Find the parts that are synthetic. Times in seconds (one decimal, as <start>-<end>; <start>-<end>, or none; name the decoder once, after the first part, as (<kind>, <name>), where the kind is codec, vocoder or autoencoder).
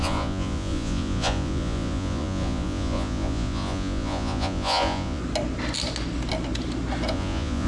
0.0-5.2 (vocoder, Vocos); 7.1-7.7